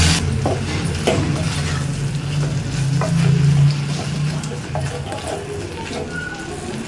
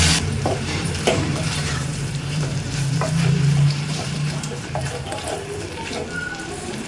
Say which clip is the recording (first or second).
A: first